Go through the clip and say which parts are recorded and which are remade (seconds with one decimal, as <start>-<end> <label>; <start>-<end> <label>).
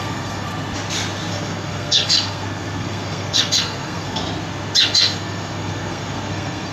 0.0-0.5 remade; 0.5-1.3 recorded; 1.3-4.2 remade; 4.2-4.8 recorded; 4.8-6.7 remade